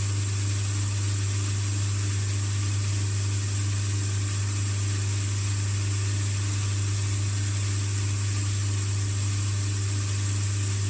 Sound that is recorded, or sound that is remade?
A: recorded